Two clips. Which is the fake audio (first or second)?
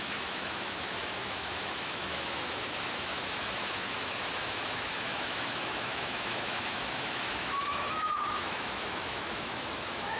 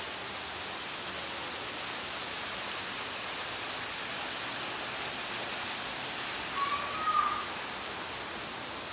first